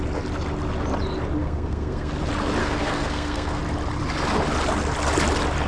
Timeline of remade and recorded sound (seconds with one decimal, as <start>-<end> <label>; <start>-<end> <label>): 0.0-1.4 recorded; 1.4-2.1 remade; 2.1-2.6 recorded; 2.6-3.6 remade; 3.6-5.7 recorded